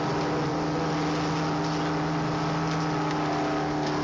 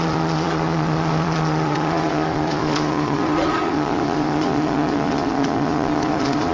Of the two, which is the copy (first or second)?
second